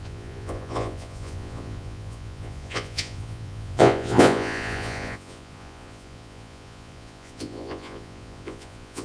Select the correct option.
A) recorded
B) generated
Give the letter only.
B